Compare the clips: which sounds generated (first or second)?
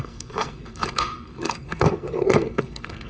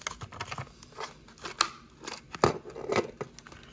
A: first